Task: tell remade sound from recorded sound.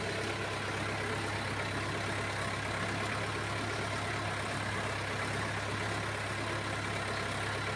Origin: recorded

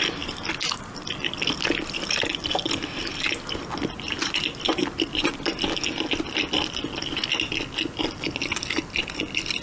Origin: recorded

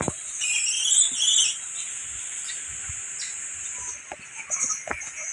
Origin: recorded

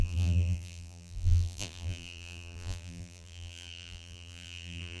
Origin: remade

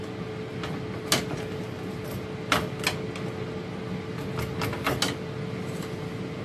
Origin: recorded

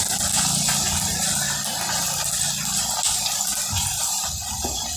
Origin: recorded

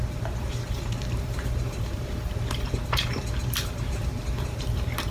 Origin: remade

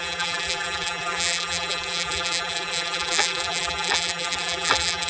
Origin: remade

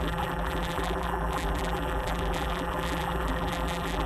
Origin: remade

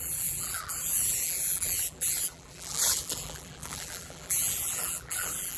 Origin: remade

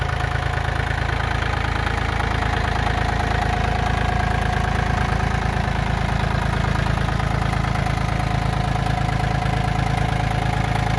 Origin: recorded